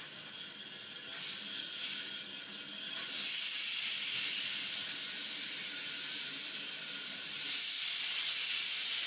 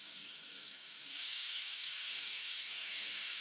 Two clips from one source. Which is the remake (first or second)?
second